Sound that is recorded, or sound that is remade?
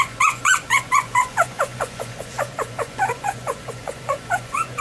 remade